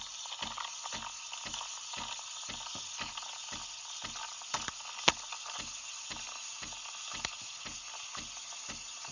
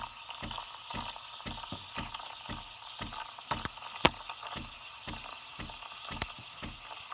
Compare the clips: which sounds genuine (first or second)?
first